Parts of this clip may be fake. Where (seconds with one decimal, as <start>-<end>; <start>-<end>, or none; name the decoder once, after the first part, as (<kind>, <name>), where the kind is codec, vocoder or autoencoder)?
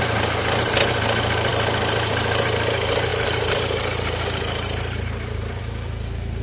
3.1-5.6 (vocoder, BigVGAN v2)